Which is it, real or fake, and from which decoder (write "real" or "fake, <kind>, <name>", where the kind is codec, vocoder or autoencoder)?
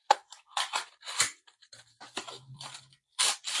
fake, vocoder, BigVGAN v2